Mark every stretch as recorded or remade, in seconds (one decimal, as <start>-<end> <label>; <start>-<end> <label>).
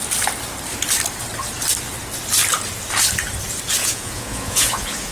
0.0-3.8 recorded; 3.8-5.1 remade